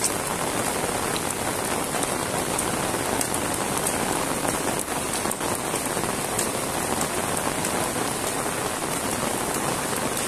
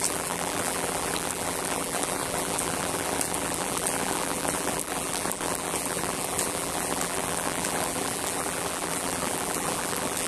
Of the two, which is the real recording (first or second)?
first